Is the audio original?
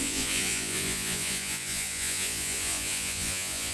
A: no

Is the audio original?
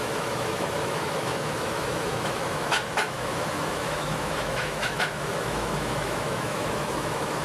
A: no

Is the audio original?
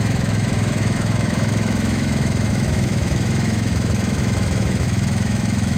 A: no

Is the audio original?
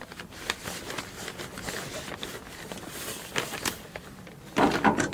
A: yes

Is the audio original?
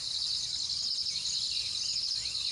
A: yes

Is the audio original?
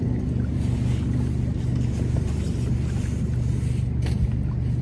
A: yes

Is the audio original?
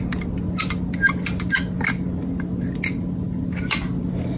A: yes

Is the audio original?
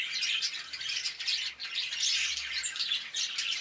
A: yes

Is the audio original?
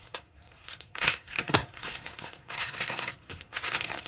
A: no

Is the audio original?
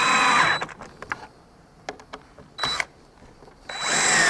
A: yes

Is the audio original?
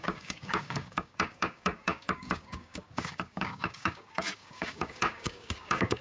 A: no